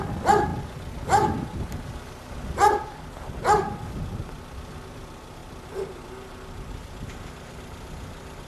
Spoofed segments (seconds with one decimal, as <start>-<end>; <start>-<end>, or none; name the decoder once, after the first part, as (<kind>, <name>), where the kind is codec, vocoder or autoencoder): none